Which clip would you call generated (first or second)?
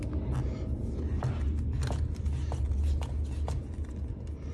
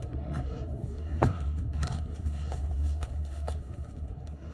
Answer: second